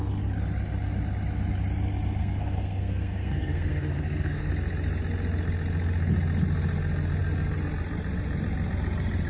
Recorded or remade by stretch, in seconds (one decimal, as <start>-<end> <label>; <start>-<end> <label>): 0.0-2.2 recorded; 2.2-4.5 remade; 4.5-9.3 recorded